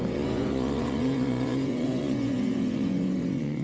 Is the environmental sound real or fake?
fake